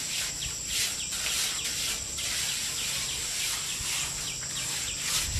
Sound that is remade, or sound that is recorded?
recorded